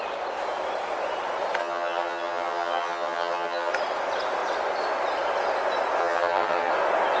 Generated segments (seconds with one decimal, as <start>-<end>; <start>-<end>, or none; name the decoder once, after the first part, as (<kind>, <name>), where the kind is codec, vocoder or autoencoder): 1.6-3.7 (vocoder, HiFi-GAN); 6.0-6.7